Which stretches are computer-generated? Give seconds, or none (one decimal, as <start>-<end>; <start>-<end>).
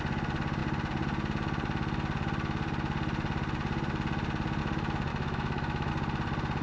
5.1-5.9